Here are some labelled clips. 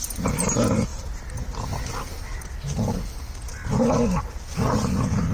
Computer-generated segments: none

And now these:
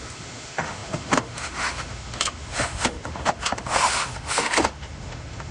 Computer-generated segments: 0.0-5.5